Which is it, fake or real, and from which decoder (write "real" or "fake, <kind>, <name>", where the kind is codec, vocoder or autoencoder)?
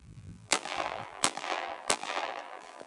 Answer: fake, vocoder, BigVGAN v2